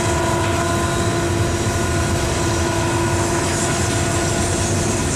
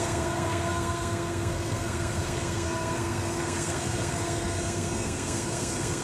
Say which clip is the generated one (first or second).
second